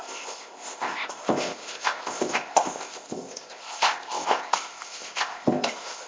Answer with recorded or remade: remade